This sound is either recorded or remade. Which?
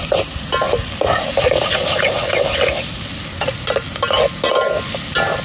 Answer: recorded